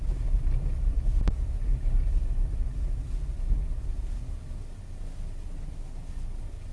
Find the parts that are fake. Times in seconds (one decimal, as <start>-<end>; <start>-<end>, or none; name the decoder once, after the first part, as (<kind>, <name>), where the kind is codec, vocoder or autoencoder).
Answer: none